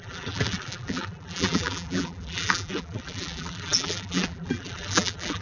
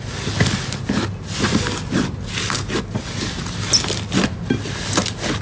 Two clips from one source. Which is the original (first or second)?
second